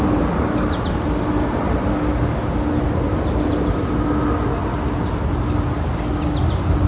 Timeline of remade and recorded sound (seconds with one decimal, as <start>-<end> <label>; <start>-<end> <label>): 0.0-6.9 recorded